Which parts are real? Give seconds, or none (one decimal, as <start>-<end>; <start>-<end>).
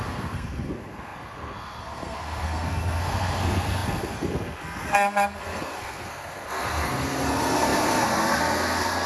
none